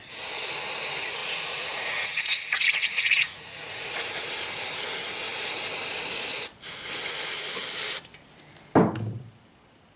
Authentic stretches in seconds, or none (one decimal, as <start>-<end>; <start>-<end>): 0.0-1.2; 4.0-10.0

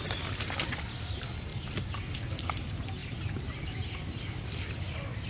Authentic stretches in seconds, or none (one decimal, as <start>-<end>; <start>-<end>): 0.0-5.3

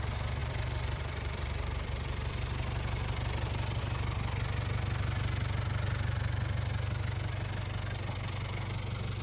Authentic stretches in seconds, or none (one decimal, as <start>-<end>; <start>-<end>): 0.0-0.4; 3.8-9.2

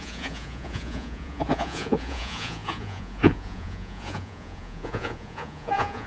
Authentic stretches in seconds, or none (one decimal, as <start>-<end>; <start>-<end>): none

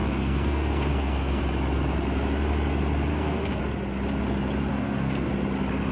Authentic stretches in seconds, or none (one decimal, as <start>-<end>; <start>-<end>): 1.4-3.1; 3.6-4.7; 5.3-5.9

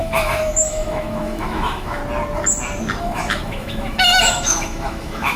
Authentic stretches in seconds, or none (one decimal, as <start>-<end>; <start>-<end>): 2.0-3.0

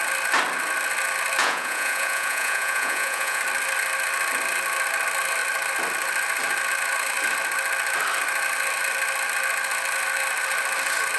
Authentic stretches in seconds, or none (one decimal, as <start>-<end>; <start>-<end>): 0.0-1.4; 3.4-11.2